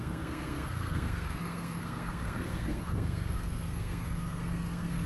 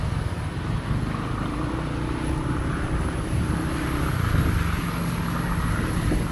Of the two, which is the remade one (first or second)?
first